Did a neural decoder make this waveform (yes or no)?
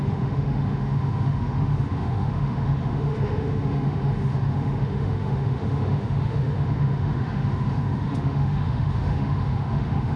yes